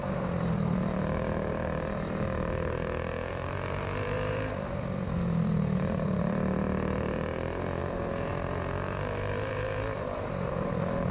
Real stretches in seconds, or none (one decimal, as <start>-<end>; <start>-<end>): none